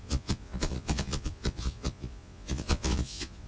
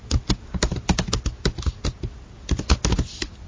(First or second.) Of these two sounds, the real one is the second